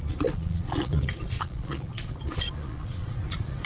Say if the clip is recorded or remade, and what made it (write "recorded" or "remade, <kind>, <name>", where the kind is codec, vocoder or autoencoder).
remade, vocoder, Vocos